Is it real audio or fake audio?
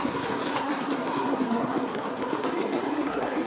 fake